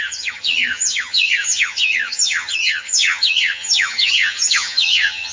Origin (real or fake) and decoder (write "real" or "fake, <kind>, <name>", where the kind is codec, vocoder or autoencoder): fake, vocoder, HiFi-GAN